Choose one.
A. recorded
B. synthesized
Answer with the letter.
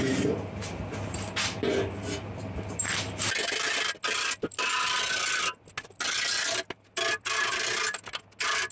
A